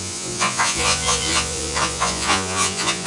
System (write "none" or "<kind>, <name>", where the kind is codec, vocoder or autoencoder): vocoder, Vocos